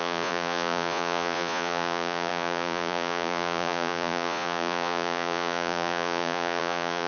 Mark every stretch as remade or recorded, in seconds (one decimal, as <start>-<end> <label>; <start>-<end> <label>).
0.0-7.1 remade